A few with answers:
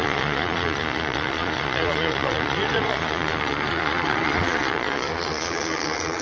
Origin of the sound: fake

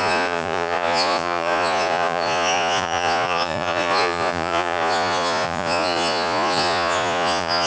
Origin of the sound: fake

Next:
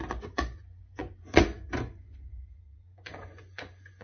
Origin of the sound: fake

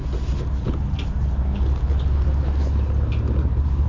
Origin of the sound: real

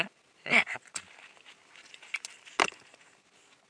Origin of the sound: real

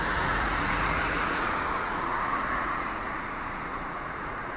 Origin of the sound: fake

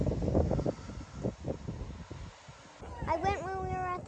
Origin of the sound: real